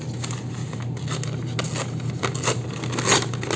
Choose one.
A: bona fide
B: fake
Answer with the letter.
A